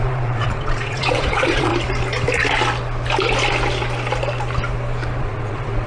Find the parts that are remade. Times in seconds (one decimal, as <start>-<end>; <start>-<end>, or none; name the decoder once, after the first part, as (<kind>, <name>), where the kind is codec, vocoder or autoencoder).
0.0-1.7 (vocoder, Vocos); 5.2-5.9